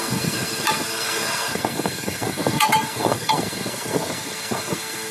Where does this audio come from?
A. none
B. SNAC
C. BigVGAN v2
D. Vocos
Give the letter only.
B